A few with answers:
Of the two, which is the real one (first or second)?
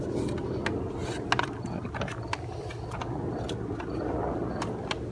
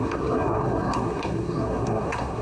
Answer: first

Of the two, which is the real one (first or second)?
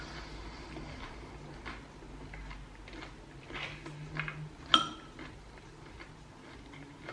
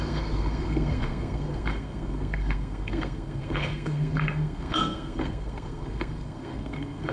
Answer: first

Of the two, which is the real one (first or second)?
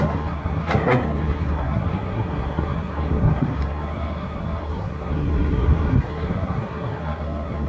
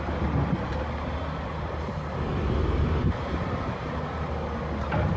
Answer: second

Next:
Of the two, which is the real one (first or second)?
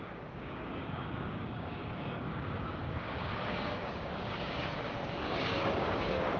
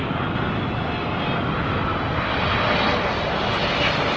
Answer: second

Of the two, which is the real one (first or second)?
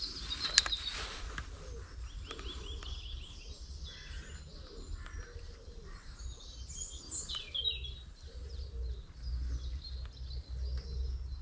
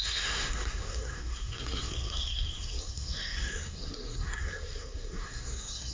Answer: first